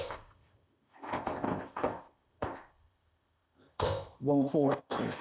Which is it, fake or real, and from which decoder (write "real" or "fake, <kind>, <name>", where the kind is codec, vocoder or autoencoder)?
fake, codec, ZipCodec